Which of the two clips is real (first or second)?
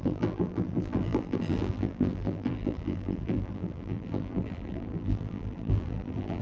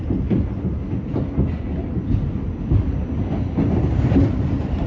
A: second